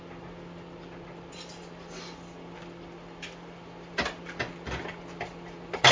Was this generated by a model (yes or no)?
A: yes